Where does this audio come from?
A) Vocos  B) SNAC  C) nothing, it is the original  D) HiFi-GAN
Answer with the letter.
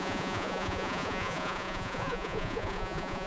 A